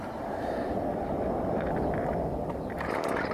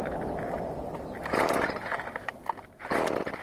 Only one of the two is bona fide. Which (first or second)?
first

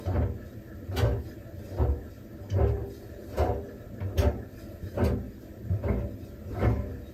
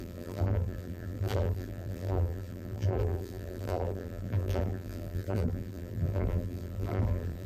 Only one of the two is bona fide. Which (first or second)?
first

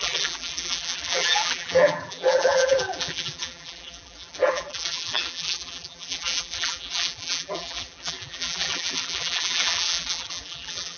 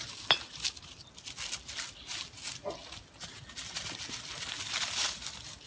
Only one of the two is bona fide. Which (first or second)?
second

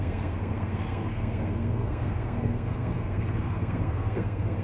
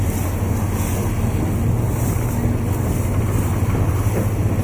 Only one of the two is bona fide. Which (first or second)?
second